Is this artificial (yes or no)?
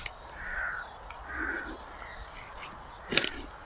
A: no